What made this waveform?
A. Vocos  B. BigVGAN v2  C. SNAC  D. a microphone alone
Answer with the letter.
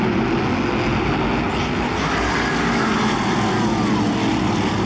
D